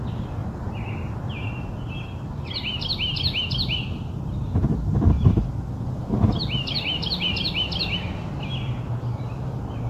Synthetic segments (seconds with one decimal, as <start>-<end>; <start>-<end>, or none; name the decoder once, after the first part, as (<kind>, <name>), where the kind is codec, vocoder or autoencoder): none